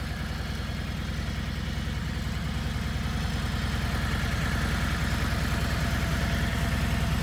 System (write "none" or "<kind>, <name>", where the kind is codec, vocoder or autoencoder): none